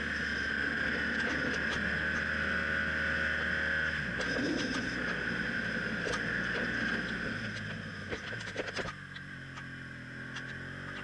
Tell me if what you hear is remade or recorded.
recorded